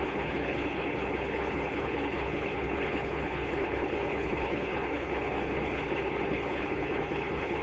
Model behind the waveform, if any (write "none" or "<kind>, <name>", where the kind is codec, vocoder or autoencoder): codec, HILCodec